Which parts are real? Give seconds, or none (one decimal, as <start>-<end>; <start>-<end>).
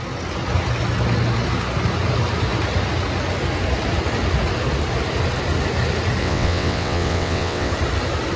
0.0-6.2; 7.7-8.4